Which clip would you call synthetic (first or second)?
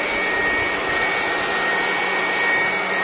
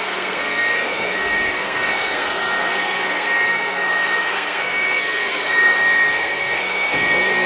second